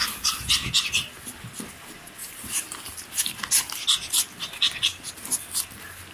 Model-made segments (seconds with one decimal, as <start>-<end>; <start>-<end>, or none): 2.2-2.9